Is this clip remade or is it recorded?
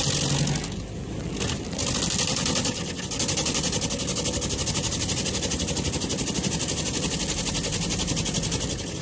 recorded